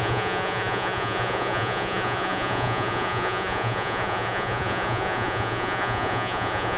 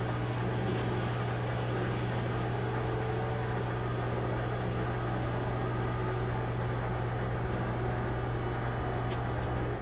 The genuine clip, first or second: second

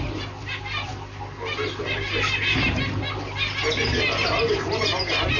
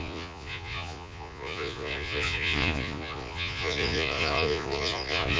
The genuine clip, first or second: first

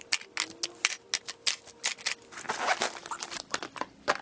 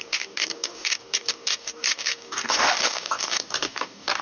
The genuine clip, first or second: first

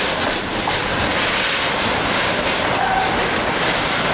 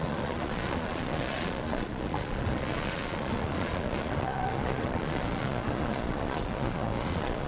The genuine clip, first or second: first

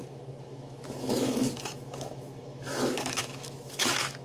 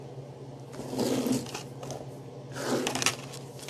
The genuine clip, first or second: second